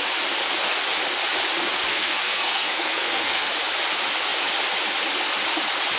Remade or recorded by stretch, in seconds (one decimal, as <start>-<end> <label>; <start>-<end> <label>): 0.0-1.9 recorded; 1.9-3.5 remade; 3.5-6.0 recorded